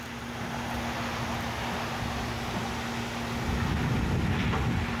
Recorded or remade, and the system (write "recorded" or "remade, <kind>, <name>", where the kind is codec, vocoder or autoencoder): recorded